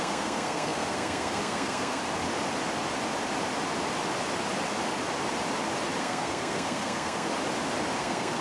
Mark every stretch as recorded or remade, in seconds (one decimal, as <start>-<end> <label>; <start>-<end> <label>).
0.0-2.0 remade; 2.0-6.0 recorded; 6.0-7.3 remade; 7.3-8.0 recorded; 8.0-8.4 remade

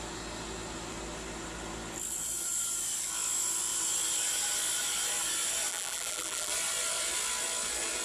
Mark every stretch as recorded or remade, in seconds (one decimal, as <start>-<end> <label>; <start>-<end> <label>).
0.0-5.7 recorded; 5.7-6.5 remade; 6.5-8.0 recorded

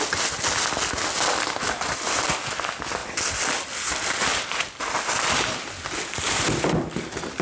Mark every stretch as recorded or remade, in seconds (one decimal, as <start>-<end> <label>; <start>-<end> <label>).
0.0-7.4 recorded

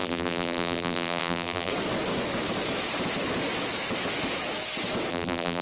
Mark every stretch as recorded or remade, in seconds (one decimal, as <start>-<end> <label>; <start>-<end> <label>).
0.0-1.7 remade; 1.7-5.1 recorded; 5.1-5.6 remade

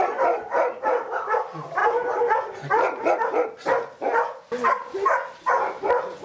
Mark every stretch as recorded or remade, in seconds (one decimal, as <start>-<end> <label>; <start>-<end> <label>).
0.0-6.2 recorded

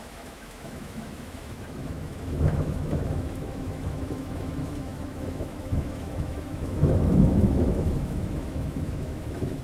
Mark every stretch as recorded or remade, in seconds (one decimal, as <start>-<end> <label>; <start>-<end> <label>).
0.0-9.6 remade